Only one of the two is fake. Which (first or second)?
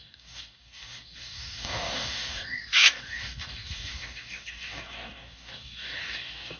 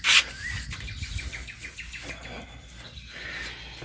first